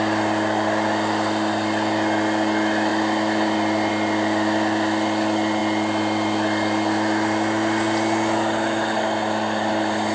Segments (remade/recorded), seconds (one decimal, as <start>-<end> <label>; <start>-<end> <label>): 0.0-10.1 recorded